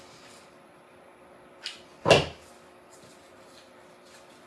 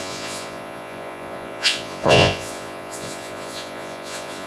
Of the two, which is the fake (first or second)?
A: second